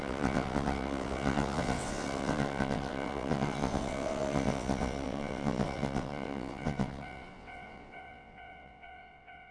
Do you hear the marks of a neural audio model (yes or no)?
yes